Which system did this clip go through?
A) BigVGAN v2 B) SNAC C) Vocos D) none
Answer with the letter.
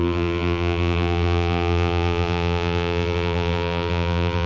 A